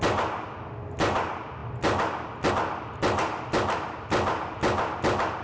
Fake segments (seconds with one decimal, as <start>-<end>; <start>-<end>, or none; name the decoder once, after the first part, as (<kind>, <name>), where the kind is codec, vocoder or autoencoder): none